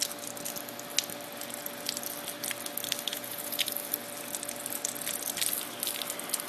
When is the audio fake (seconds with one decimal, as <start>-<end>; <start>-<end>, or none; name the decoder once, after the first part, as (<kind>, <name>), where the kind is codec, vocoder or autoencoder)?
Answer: 3.1-3.7 (vocoder, Vocos)